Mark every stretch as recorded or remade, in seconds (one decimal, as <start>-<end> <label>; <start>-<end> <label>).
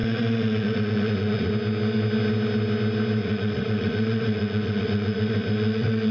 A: 0.0-1.5 remade; 1.5-3.2 recorded; 3.2-6.1 remade